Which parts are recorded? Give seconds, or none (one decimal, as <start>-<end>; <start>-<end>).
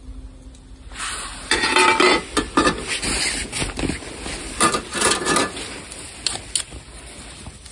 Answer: 0.0-7.7